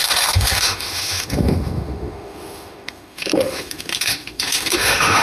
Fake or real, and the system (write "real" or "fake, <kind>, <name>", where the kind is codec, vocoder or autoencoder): fake, autoencoder, DAC-VAE